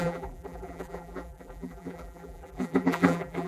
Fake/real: fake